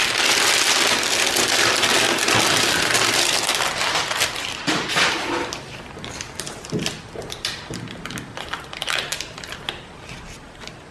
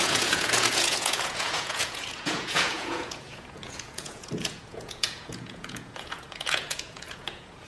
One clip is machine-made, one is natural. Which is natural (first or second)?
first